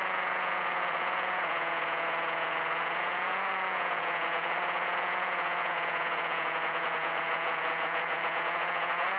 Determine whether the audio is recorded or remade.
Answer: remade